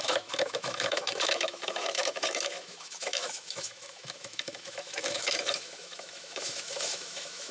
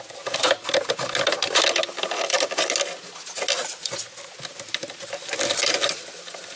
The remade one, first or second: first